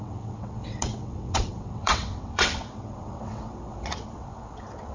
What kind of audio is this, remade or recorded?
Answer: remade